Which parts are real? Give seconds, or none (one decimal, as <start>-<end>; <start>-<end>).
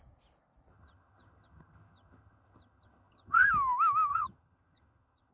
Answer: 0.0-0.7; 3.5-4.1